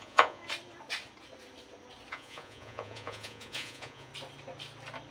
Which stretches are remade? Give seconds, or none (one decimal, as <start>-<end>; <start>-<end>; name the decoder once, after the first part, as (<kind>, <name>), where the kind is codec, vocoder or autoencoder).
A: 0.0-0.4 (vocoder, Vocos); 2.1-4.1